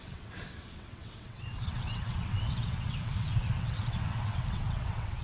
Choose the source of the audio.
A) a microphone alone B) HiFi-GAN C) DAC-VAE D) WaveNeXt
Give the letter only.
D